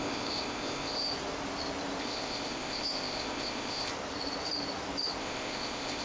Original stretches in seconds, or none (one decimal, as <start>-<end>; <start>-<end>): 1.1-2.0; 3.9-5.2